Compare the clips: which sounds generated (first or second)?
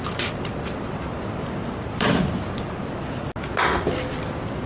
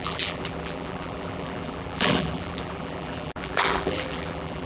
second